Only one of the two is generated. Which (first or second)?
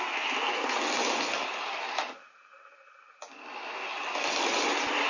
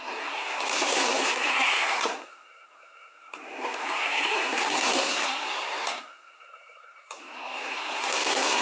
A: second